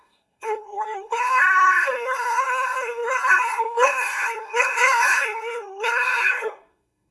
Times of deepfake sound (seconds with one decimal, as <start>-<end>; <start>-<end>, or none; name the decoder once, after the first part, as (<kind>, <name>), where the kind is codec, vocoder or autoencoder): 0.0-7.1 (codec, SNAC)